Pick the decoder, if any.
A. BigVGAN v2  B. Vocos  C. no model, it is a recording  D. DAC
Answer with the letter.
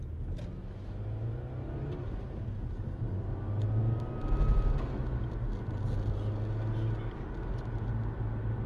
C